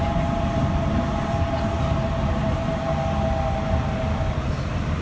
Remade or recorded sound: recorded